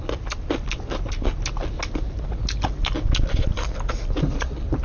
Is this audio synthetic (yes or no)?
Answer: no